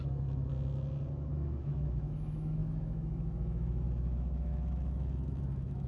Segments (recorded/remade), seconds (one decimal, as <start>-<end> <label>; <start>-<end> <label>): 0.0-0.5 remade; 0.5-1.3 recorded; 1.3-5.9 remade